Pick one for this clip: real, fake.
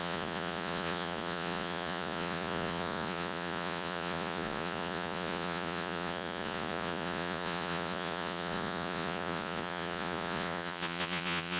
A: fake